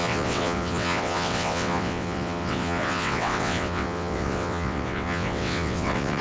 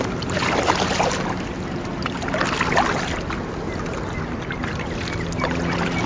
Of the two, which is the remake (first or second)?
first